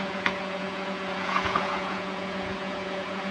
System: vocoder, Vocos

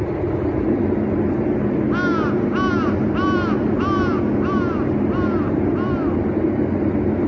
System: none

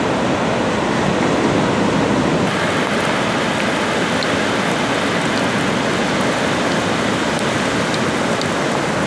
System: none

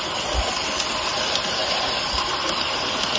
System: none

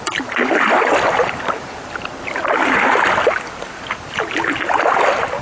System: none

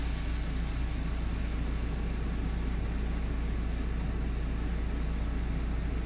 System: none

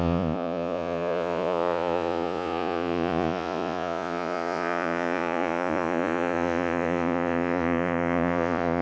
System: vocoder, Vocos